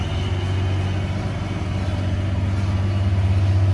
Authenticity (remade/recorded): recorded